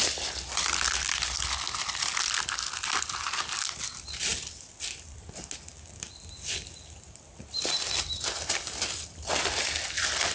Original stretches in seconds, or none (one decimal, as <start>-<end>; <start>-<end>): 0.0-10.3

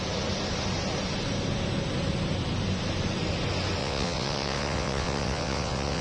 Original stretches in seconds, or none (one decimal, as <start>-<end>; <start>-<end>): 0.0-3.8

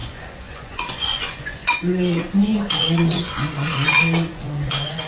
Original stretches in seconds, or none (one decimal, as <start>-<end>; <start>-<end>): none

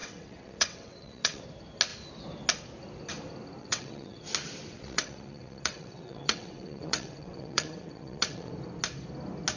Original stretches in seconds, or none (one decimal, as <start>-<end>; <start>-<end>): 1.4-3.6; 4.2-4.7; 8.5-9.6

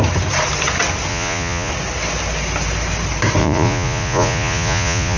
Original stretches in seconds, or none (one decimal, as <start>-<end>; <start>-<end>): 0.0-1.1; 1.7-3.4

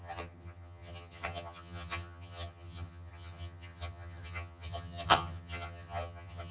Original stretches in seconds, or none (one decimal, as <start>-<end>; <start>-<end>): none

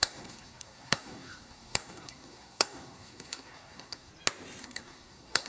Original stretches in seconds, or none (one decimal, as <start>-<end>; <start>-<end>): 4.1-4.6

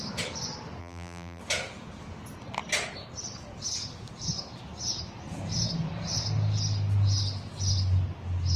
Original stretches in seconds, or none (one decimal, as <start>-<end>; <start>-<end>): 0.0-0.8; 1.4-8.6